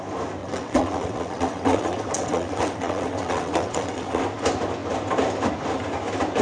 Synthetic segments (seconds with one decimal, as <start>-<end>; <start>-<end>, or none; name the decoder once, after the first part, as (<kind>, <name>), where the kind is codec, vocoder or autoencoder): 0.4-4.2 (vocoder, WaveNeXt)